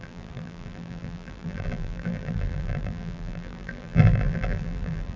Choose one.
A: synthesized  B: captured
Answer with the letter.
A